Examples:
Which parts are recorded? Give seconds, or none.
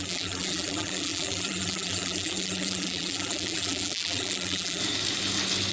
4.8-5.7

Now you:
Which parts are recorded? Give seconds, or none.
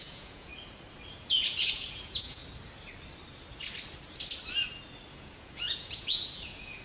0.5-1.2; 2.4-5.1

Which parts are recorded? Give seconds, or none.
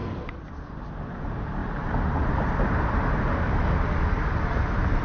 0.0-0.7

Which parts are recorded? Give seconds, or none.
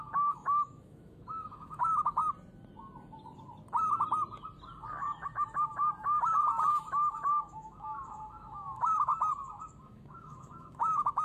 2.2-6.7; 9.1-9.8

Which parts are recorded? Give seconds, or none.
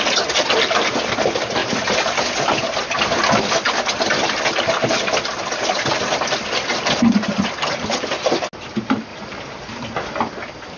0.0-10.8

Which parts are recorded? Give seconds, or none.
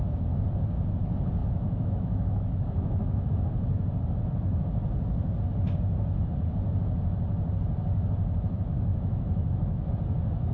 0.0-1.4; 3.3-8.9; 9.9-10.5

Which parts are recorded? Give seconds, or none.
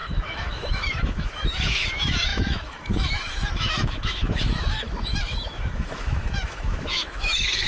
none